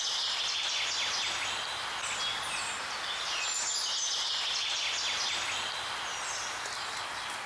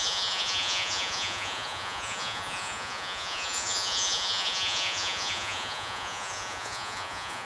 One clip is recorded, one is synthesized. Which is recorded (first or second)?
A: first